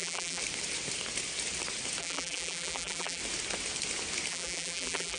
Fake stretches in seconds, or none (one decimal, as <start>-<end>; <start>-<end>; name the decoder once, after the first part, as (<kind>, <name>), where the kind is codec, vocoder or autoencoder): 0.0-0.4 (vocoder, BigVGAN v2); 2.0-3.2; 4.3-5.2